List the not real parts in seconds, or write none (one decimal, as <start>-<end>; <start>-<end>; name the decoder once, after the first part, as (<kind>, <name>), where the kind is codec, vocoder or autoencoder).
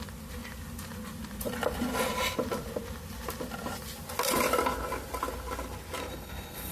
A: 6.0-6.7 (codec, SNAC)